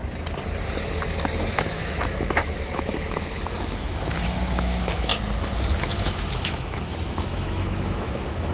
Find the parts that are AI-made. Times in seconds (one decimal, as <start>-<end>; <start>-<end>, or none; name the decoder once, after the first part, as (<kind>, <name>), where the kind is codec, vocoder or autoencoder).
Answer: 1.5-5.1 (autoencoder, DAC-VAE); 5.8-8.5